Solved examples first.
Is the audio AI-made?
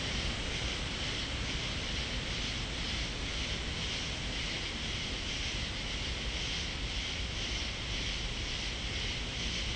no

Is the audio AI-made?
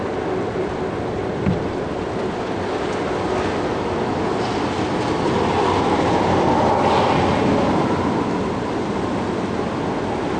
no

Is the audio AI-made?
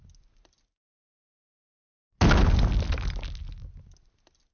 no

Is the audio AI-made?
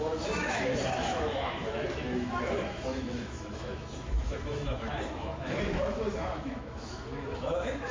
yes